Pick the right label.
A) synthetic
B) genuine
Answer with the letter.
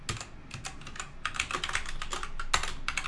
B